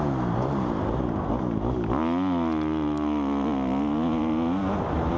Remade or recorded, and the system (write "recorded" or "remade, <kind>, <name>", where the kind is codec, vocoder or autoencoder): recorded